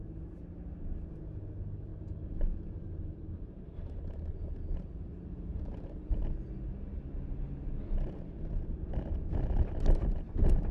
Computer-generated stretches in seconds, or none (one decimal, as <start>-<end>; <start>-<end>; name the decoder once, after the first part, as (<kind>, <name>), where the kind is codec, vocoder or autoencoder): 1.9-6.1 (vocoder, BigVGAN v2)